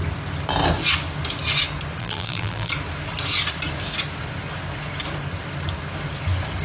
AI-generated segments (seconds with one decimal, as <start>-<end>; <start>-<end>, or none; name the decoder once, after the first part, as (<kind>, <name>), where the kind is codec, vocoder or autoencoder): 2.0-2.7 (vocoder, BigVGAN v2)